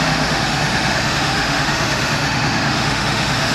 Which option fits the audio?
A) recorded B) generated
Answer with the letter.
B